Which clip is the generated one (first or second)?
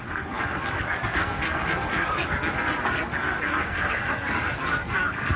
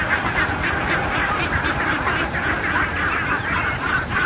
first